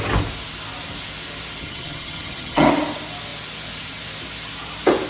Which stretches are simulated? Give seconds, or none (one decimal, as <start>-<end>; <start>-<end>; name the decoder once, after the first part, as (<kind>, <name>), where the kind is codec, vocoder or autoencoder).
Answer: 1.6-2.7 (vocoder, HiFi-GAN)